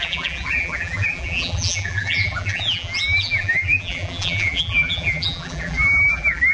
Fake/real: fake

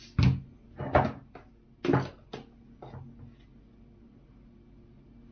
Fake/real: real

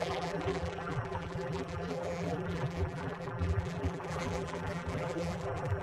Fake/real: fake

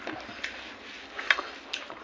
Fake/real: real